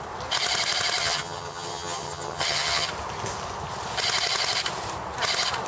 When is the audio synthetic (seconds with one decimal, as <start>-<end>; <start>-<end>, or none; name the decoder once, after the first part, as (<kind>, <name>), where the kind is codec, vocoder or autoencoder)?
1.0-2.9 (vocoder, HiFi-GAN)